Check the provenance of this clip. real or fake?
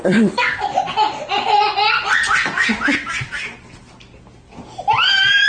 real